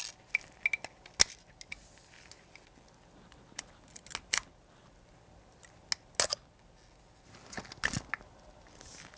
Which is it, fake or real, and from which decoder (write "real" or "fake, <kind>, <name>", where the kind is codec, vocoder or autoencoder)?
real